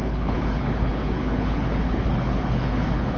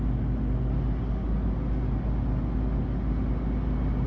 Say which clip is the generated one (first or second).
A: first